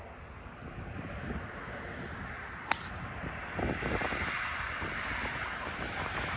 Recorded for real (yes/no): yes